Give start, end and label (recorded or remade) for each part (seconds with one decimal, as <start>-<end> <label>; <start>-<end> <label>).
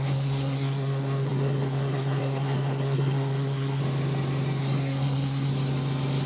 0.0-3.8 remade; 3.8-4.6 recorded; 4.6-5.5 remade; 5.5-6.3 recorded